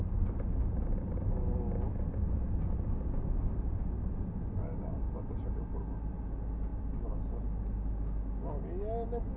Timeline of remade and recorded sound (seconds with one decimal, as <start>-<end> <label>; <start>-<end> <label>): 0.0-6.7 recorded; 6.7-7.3 remade; 7.3-9.4 recorded